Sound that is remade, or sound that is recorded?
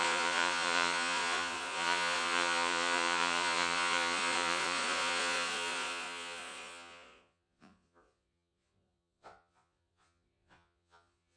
remade